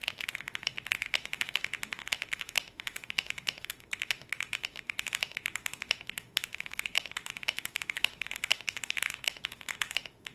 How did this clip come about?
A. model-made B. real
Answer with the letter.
A